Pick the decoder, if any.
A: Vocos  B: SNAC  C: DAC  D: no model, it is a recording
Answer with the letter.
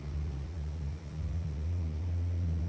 A